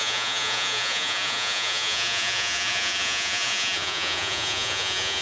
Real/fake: fake